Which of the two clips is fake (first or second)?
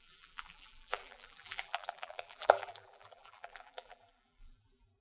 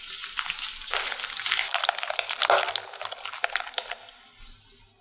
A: first